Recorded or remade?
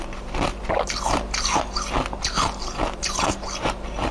recorded